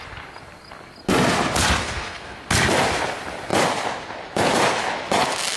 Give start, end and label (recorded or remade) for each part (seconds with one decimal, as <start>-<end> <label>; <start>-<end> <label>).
0.0-1.8 recorded; 1.8-2.4 remade; 2.4-5.6 recorded